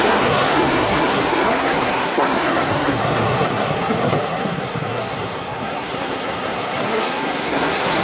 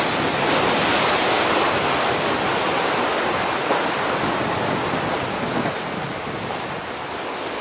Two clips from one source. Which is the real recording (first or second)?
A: second